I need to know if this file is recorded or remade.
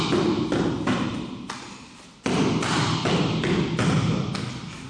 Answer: recorded